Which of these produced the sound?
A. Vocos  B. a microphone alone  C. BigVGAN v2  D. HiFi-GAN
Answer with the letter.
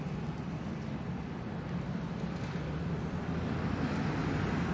B